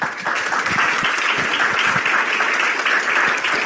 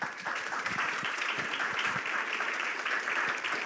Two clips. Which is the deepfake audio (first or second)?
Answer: second